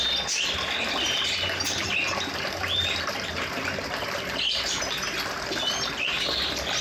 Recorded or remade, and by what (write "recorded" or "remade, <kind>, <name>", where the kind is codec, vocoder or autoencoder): recorded